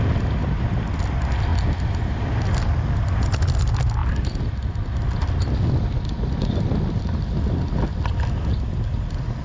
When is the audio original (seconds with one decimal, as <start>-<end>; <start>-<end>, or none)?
0.0-1.5; 2.2-9.4